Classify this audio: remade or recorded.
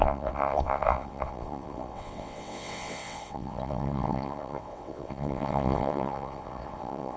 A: remade